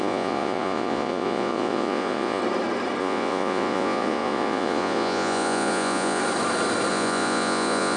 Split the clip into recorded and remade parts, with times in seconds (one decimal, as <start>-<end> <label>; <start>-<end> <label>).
0.0-2.4 remade; 2.4-3.0 recorded; 3.0-6.2 remade; 6.2-6.9 recorded; 6.9-8.0 remade